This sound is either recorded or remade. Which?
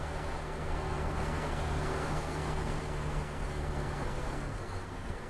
remade